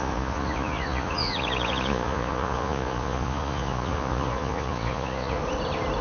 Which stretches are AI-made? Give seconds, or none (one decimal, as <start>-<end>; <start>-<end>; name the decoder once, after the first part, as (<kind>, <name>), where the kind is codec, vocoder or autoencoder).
0.0-5.4 (vocoder, Vocos)